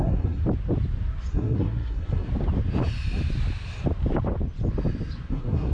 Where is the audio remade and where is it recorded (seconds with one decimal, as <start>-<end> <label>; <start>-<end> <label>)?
0.0-0.4 remade; 0.4-1.3 recorded; 1.3-2.3 remade; 2.3-5.3 recorded; 5.3-5.7 remade